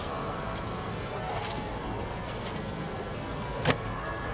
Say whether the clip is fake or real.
fake